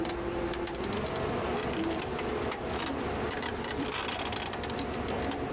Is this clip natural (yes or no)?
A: yes